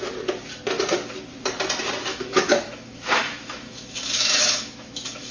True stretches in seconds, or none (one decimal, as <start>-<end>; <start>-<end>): 0.0-2.1

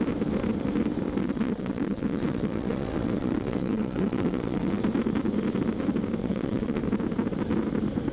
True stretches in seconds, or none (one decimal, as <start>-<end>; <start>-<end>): 0.0-1.2; 4.8-6.2; 6.8-8.1

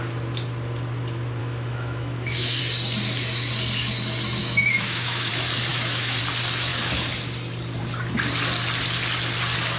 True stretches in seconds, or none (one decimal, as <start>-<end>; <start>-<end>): 0.0-1.4; 2.6-4.4; 5.3-5.7; 6.2-9.8

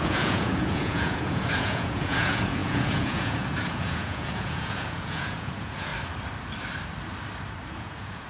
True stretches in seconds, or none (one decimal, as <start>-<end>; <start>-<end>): 5.9-7.7

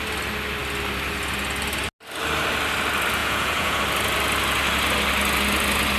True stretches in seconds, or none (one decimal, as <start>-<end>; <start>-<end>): 0.0-3.2; 3.8-6.0

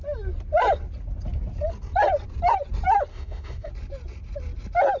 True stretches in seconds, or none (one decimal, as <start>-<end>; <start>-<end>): 0.0-3.1; 3.7-5.0

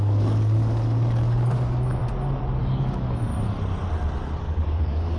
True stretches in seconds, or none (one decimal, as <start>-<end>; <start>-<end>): 2.0-2.6; 3.3-4.4